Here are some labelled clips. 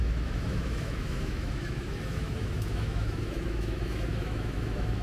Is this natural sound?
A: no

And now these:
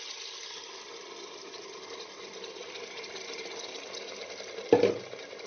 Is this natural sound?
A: yes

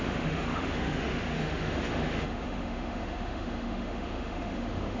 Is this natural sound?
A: no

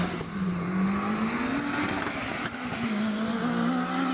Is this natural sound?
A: yes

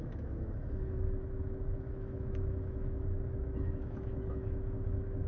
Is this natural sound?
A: no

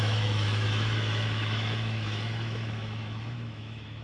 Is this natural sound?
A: no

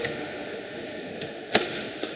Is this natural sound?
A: no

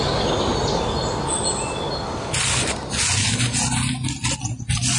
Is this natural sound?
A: yes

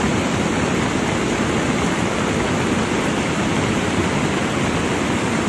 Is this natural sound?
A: yes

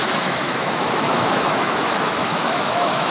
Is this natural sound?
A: no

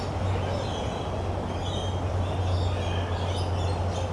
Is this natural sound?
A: yes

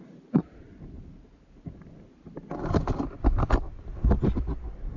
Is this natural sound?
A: yes